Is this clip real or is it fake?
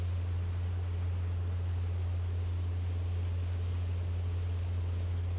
real